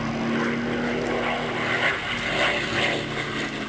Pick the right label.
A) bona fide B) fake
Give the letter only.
A